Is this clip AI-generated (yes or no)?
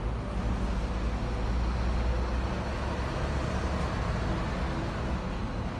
no